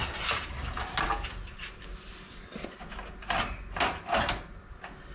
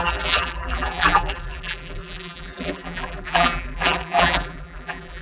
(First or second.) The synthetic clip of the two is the second